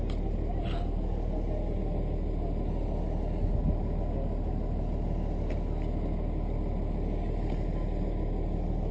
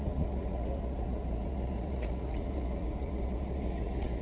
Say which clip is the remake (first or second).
second